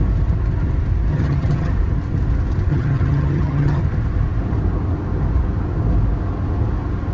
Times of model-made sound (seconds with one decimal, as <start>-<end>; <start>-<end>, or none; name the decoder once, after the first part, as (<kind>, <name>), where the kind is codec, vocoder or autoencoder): 1.1-1.7 (vocoder, HiFi-GAN); 2.7-3.8